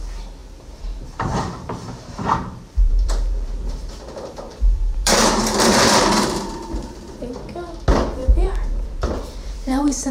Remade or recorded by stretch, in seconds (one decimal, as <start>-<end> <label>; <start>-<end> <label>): 0.0-0.4 recorded; 0.4-4.0 remade; 4.0-4.5 recorded; 4.5-7.0 remade; 7.0-8.2 recorded; 8.2-10.1 remade

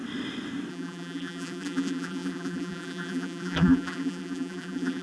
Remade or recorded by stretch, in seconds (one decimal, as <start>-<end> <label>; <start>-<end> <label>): 0.0-0.7 recorded; 0.7-5.0 remade